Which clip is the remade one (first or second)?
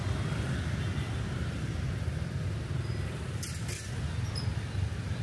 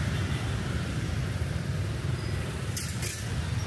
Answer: second